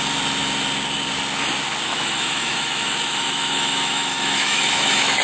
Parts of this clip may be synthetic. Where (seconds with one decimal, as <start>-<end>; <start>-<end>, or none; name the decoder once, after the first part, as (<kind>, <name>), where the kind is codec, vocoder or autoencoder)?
1.9-5.2 (autoencoder, DAC-VAE)